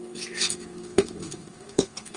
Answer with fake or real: fake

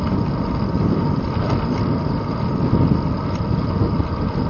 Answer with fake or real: real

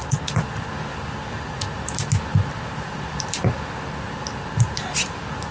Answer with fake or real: real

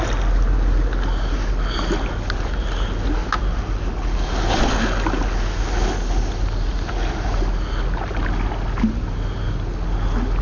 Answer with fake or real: real